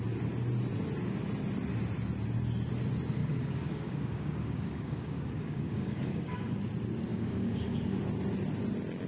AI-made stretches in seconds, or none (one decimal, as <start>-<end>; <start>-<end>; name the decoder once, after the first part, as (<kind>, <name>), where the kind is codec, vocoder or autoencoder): 3.2-6.6 (codec, DAC); 7.1-8.0